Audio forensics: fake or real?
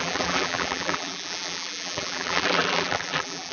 fake